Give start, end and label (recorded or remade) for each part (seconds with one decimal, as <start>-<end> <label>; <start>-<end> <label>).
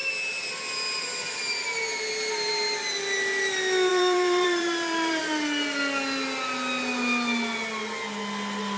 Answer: 0.0-3.9 recorded; 3.9-5.2 remade; 5.2-8.8 recorded